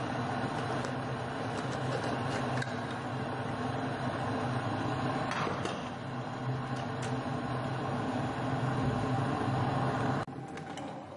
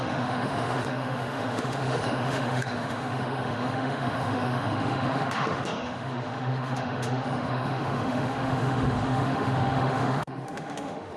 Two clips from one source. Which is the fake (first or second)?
second